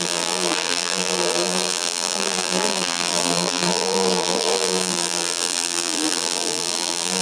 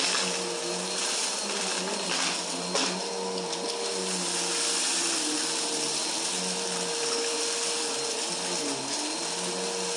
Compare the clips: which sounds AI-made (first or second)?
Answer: first